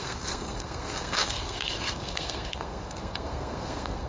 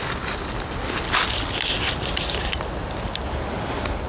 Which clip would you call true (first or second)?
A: second